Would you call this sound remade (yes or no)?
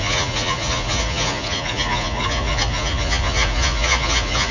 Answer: yes